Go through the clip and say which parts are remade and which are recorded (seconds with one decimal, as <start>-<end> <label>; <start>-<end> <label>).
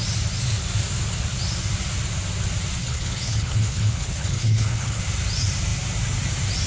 0.0-2.8 recorded; 2.8-5.0 remade; 5.0-6.7 recorded